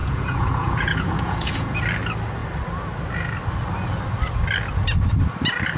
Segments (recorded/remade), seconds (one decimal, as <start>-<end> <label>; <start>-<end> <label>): 0.0-1.8 remade; 1.8-5.8 recorded